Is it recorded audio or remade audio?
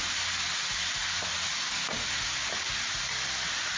recorded